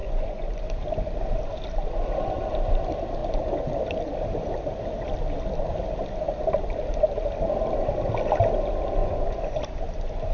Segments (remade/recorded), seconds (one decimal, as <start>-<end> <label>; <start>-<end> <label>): 0.0-0.6 remade; 0.6-9.0 recorded; 9.0-9.6 remade; 9.6-10.3 recorded